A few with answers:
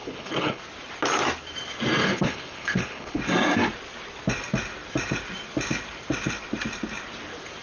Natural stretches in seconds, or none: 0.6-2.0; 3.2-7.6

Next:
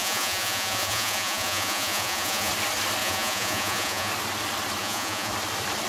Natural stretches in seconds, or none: 2.5-3.0; 4.1-4.8; 5.3-5.9

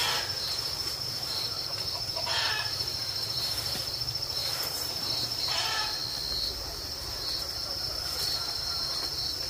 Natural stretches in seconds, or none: 1.7-2.5; 6.0-6.6

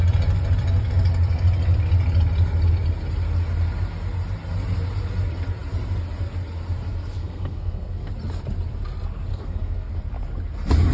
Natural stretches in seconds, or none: 0.0-7.2; 8.1-9.3; 9.9-10.9

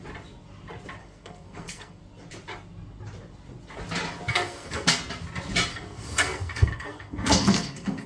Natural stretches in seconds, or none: 0.0-1.0; 2.0-4.3; 5.0-5.7

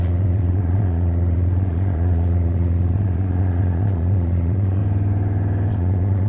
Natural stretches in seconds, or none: 4.8-5.7

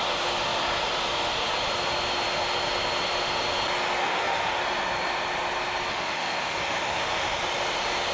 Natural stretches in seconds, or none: 0.0-4.0; 4.6-5.9; 7.4-8.1

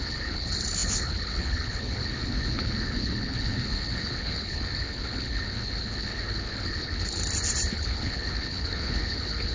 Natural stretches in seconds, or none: 7.2-7.7